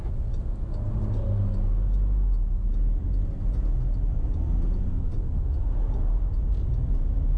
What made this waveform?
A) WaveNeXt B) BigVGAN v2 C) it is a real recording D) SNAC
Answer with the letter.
C